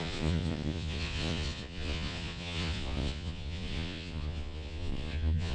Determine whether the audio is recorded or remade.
remade